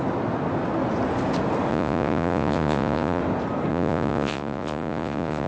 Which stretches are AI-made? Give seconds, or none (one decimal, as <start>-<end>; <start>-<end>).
1.7-3.2; 3.7-5.5